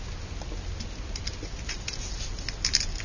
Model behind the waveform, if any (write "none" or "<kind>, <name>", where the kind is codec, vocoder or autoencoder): none